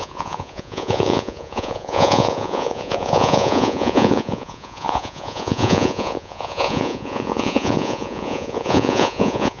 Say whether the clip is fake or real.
fake